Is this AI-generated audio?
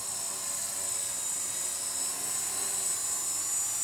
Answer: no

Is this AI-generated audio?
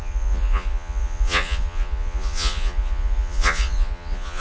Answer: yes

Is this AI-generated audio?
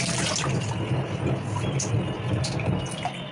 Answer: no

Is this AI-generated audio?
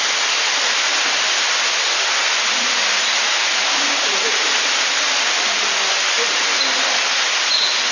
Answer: no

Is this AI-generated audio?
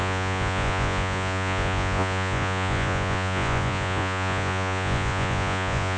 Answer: yes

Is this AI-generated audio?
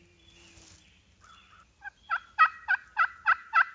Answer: no